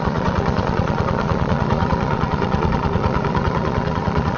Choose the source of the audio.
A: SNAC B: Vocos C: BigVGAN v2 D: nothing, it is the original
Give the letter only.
B